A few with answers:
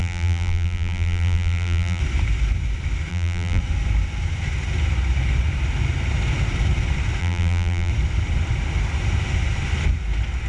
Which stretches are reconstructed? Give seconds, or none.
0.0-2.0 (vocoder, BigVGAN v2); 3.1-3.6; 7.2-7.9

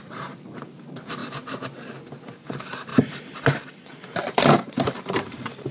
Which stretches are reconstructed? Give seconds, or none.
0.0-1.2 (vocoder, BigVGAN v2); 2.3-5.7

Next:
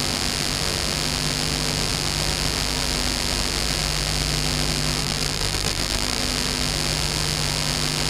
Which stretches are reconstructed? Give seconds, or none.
5.0-6.2 (vocoder, BigVGAN v2)